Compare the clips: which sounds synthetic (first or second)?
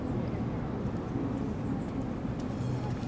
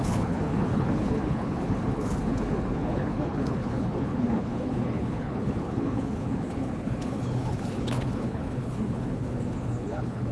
second